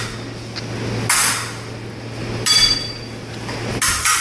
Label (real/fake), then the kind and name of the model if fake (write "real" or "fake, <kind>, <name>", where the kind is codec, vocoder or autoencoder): real